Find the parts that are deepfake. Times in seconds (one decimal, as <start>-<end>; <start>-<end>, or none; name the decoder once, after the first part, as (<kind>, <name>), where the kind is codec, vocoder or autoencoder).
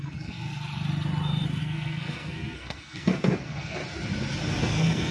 0.0-0.5 (codec, SNAC); 1.6-3.8; 4.6-5.1